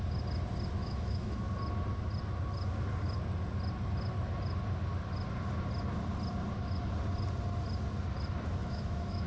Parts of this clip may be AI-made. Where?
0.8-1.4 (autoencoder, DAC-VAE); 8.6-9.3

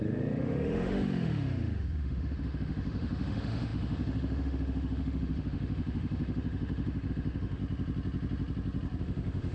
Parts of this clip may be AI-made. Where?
0.0-7.6 (autoencoder, DAC-VAE); 9.0-9.5

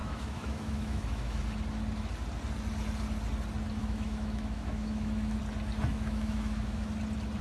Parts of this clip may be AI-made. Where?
0.0-1.4 (autoencoder, DAC-VAE); 3.8-5.4; 5.9-6.9

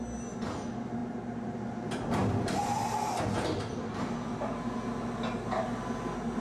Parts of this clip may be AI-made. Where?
none

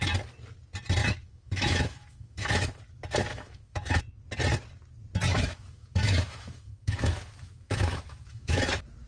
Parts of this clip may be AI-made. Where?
1.0-2.8 (autoencoder, DAC-VAE); 3.3-4.0; 5.3-8.6

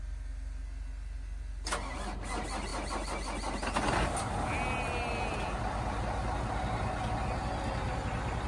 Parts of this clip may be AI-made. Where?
none